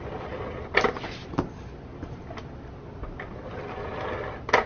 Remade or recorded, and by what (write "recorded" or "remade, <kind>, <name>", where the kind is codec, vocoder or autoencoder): recorded